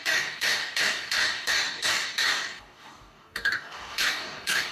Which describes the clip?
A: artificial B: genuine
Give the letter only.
A